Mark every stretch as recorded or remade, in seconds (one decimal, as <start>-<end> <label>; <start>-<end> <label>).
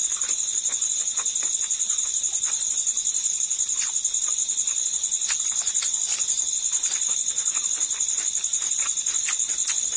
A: 0.0-10.0 recorded